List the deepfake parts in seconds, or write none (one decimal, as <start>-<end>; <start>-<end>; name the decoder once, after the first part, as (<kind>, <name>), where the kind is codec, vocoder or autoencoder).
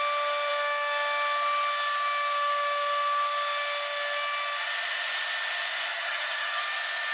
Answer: 5.9-6.6 (vocoder, HiFi-GAN)